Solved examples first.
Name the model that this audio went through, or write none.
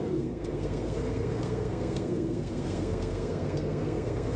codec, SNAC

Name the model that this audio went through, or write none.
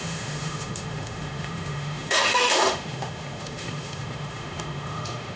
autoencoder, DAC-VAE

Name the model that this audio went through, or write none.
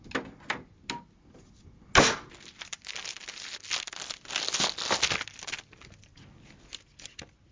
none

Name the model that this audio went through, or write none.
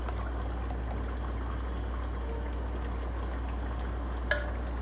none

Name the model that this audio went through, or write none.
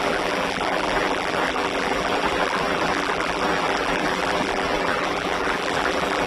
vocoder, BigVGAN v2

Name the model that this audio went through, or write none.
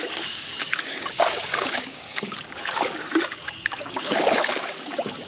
codec, DAC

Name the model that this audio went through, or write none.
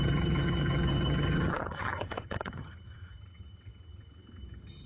vocoder, HiFi-GAN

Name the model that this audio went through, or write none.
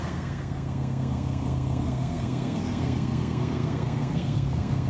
codec, SNAC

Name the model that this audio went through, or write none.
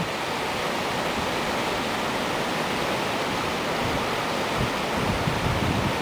none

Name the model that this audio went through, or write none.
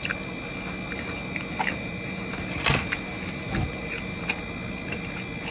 none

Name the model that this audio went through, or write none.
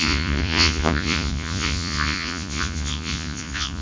vocoder, Vocos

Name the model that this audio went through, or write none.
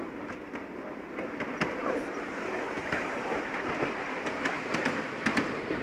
none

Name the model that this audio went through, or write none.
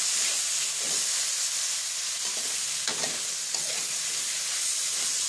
none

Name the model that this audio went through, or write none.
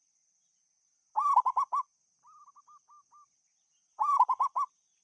none